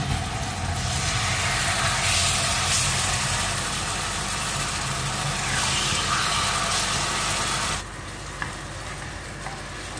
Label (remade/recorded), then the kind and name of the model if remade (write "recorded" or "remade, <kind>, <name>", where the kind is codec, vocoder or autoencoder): recorded